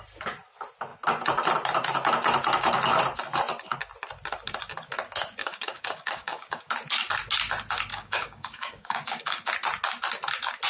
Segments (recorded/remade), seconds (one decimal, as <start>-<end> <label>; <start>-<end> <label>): 0.0-5.4 recorded; 5.4-6.7 remade; 6.7-7.9 recorded; 7.9-9.5 remade; 9.5-10.7 recorded